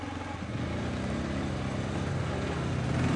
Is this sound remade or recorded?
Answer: recorded